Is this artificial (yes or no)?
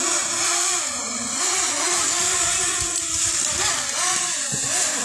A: no